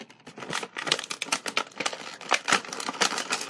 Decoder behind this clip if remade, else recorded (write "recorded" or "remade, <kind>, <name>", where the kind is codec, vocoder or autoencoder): recorded